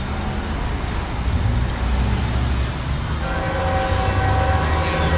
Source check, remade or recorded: recorded